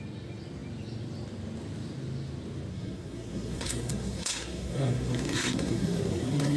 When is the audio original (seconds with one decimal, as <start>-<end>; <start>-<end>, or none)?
0.0-2.7